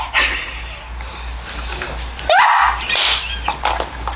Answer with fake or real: real